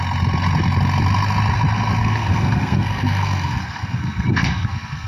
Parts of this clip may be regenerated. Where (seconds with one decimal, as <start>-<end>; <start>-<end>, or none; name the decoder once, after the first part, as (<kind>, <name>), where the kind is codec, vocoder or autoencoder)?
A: 2.0-5.1 (codec, SNAC)